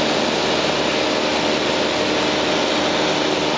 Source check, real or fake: real